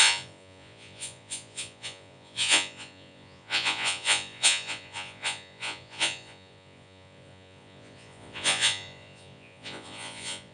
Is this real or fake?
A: fake